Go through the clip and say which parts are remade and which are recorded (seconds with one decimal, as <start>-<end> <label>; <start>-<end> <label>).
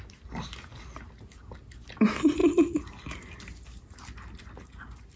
0.0-2.4 recorded; 2.4-3.4 remade; 3.4-5.2 recorded